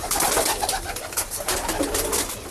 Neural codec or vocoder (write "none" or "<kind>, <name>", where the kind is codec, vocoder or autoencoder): vocoder, BigVGAN v2